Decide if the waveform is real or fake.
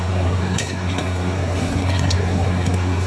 fake